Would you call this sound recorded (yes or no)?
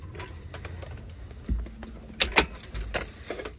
yes